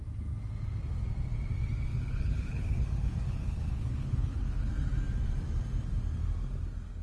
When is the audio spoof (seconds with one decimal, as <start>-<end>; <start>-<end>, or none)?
1.9-4.7